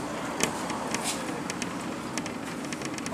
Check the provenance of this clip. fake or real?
real